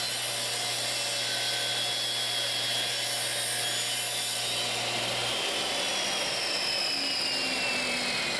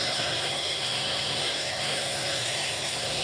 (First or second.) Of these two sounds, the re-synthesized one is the second